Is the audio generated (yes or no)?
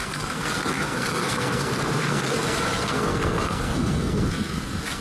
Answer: yes